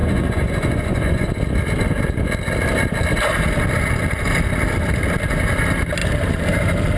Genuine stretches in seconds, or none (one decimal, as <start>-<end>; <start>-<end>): 1.3-7.0